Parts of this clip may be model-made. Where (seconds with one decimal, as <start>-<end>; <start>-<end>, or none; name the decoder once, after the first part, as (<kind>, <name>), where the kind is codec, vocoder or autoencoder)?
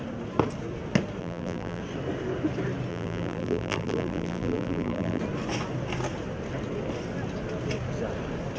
1.2-1.8 (vocoder, BigVGAN v2); 2.9-5.2